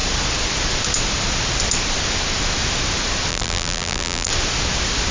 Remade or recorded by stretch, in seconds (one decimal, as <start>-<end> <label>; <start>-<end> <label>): 0.0-3.3 recorded; 3.3-4.3 remade; 4.3-5.1 recorded